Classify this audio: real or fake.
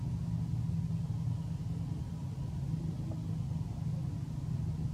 real